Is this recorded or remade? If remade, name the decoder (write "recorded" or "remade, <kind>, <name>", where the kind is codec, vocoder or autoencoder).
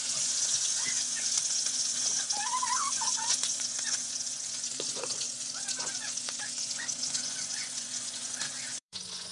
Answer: remade, vocoder, Vocos